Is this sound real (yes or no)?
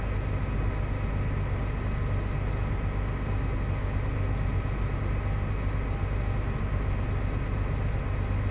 yes